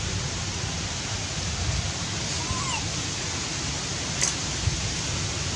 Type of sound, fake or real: real